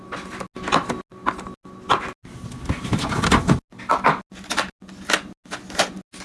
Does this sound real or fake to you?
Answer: real